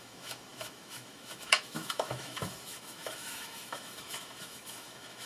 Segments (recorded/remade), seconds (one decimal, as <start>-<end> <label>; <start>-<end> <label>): 0.0-5.3 remade